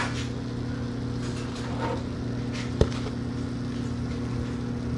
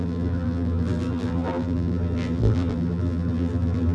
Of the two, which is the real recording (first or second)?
first